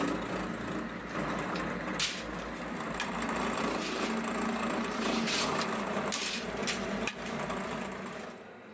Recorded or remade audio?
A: recorded